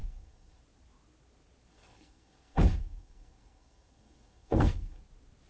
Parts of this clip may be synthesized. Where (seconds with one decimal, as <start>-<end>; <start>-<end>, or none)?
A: 0.0-0.6; 1.7-5.0